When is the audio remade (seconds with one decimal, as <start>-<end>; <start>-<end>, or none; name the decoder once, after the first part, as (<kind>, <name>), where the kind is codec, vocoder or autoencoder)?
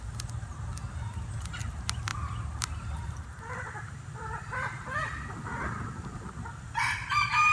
none